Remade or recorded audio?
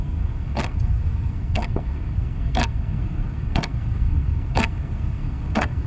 remade